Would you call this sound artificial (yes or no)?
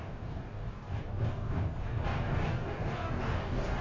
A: yes